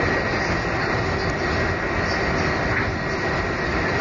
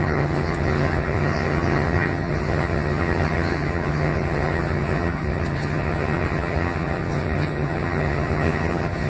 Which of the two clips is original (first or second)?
first